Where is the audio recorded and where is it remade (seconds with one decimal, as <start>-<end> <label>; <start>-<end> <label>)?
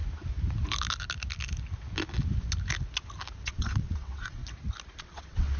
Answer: 0.0-3.4 recorded; 3.4-4.4 remade; 4.4-5.0 recorded; 5.0-5.6 remade